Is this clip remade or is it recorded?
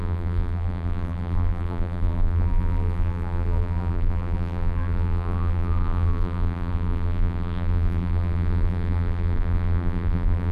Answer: remade